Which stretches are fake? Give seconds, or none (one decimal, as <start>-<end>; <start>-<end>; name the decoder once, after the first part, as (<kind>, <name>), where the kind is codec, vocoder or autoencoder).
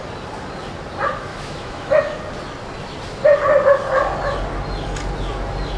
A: 1.3-2.0 (autoencoder, DAC-VAE)